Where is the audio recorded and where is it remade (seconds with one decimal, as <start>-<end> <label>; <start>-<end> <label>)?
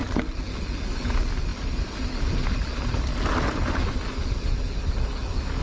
0.0-5.6 recorded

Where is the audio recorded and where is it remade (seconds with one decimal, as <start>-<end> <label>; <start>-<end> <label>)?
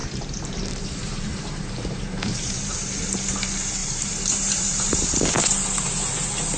0.0-2.7 remade; 2.7-3.8 recorded; 3.8-6.0 remade; 6.0-6.6 recorded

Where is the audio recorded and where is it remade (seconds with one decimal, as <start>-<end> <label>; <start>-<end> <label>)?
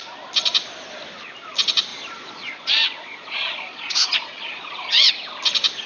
0.0-1.9 recorded; 1.9-5.1 remade; 5.1-5.9 recorded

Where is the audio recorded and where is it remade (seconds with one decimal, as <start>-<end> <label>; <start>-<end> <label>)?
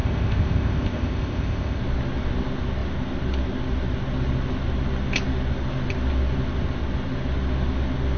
0.0-1.8 remade; 1.8-8.2 recorded